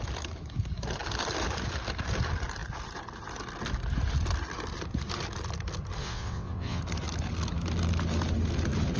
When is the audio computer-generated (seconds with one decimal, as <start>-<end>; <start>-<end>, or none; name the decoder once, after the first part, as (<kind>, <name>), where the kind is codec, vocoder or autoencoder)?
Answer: 6.0-6.8 (vocoder, WaveNeXt)